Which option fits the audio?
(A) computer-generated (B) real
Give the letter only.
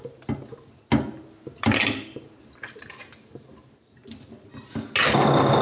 B